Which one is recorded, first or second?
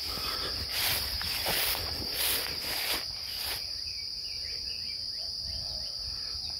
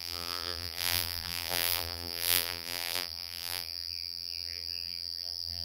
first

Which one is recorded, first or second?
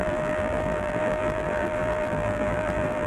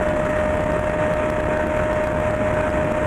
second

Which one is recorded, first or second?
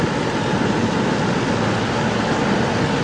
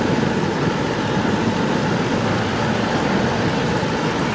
first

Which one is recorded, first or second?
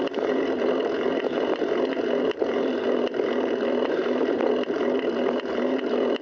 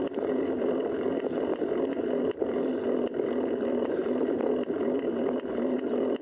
first